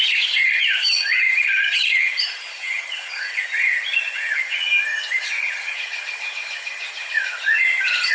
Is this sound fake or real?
fake